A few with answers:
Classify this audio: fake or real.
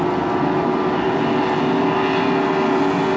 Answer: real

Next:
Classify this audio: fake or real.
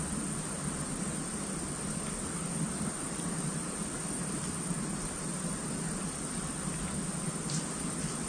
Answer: real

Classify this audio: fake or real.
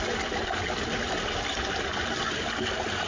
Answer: real